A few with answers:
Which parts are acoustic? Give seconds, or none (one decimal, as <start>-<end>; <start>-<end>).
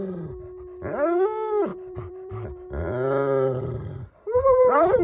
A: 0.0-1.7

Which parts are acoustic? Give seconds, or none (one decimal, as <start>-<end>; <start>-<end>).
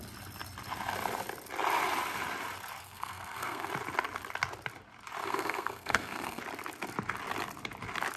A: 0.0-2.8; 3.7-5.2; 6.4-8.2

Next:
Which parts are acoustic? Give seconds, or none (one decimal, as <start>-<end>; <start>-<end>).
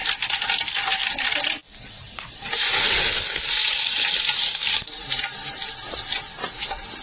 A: 0.6-1.0; 5.2-7.0